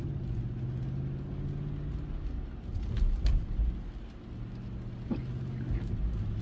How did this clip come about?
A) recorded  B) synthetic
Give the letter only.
A